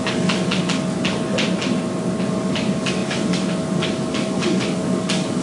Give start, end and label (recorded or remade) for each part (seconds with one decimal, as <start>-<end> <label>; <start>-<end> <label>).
0.0-0.6 remade; 0.6-2.3 recorded; 2.3-5.4 remade